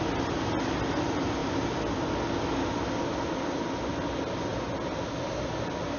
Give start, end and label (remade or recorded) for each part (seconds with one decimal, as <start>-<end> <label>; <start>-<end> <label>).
0.0-6.0 recorded